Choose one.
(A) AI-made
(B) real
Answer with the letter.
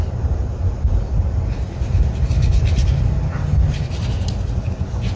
B